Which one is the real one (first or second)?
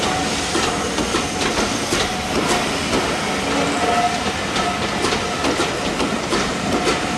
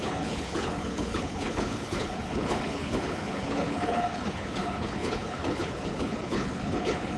first